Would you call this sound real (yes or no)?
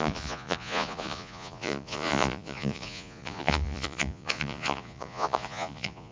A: no